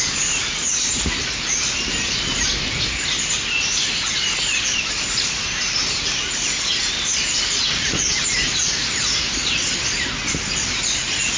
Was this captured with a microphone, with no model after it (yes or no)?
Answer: yes